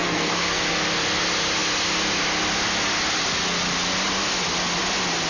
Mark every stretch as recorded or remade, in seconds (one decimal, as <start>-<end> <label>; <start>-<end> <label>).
0.0-0.6 remade; 0.6-5.3 recorded